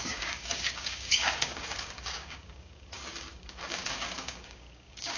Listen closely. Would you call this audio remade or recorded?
remade